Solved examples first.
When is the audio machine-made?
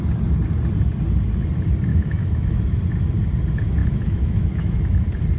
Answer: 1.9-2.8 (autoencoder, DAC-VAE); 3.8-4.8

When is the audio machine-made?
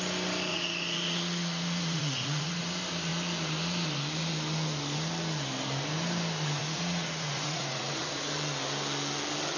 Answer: 0.5-2.6 (vocoder, Vocos); 6.6-8.3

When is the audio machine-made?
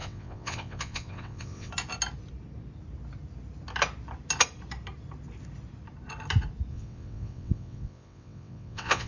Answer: 0.0-1.7 (vocoder, WaveNeXt); 6.7-9.1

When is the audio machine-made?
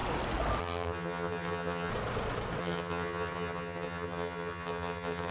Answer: 0.6-1.9 (vocoder, HiFi-GAN); 2.6-5.3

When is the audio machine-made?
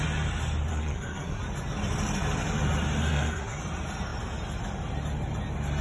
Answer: 0.7-1.4 (codec, SNAC); 3.0-3.6